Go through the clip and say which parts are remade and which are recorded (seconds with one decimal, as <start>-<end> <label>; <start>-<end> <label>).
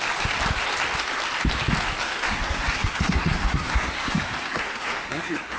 0.0-2.0 recorded; 2.0-5.6 remade